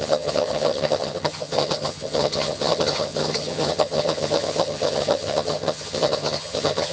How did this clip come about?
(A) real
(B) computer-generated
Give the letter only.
B